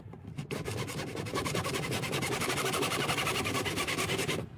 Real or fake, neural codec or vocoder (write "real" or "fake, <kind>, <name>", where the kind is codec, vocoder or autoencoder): fake, vocoder, BigVGAN v2